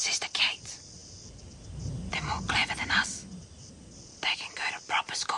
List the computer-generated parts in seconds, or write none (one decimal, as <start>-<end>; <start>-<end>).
none